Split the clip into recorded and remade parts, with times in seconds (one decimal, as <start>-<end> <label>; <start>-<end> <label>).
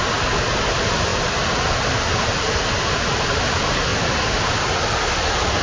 0.0-5.6 recorded